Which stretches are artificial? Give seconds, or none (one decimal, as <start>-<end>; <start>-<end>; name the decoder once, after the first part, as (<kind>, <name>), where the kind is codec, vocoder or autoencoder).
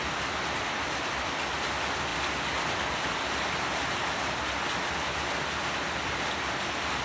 none